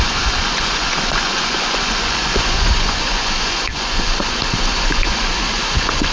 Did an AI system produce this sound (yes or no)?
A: yes